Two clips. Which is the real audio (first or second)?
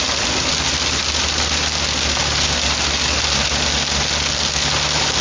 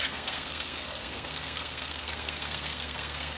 first